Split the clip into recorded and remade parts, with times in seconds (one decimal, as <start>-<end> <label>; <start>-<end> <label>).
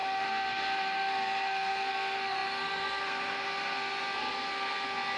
0.0-5.2 remade